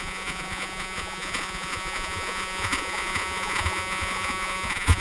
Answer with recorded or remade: remade